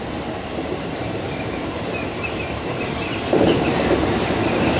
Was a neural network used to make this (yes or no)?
yes